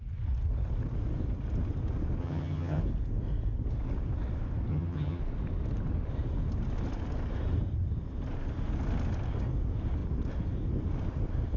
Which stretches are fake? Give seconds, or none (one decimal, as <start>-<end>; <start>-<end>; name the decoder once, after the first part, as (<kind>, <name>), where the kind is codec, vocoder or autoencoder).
2.2-2.8 (vocoder, HiFi-GAN); 4.7-5.2

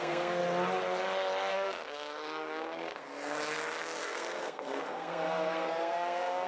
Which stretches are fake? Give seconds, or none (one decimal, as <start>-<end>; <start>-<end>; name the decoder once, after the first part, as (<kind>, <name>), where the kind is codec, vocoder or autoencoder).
0.0-0.4 (codec, SNAC); 1.5-6.5

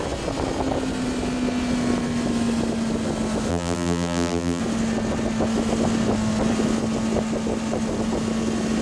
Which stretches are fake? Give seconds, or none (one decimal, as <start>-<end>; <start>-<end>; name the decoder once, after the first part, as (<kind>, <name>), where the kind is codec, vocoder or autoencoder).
3.5-4.6 (vocoder, BigVGAN v2)

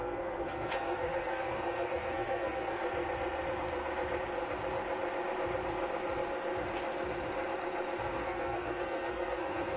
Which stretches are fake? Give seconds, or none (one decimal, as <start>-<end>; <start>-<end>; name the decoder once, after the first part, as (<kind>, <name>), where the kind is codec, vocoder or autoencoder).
0.0-2.8 (codec, SNAC); 8.0-9.8

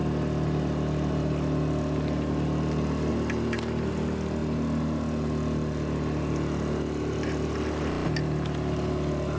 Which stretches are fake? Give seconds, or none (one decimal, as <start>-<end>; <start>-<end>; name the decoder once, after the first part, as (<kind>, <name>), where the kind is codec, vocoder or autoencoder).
none

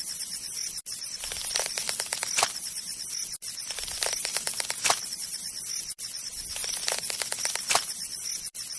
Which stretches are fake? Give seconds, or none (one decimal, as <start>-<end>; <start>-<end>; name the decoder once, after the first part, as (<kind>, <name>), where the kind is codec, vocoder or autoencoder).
none

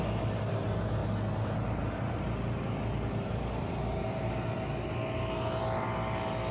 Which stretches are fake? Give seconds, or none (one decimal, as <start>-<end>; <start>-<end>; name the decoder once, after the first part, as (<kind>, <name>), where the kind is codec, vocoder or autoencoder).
none